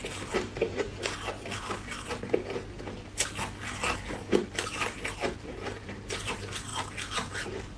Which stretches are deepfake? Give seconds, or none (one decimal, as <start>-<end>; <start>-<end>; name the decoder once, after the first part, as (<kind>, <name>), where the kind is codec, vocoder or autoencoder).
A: none